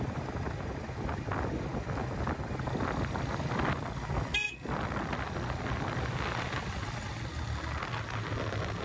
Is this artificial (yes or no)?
no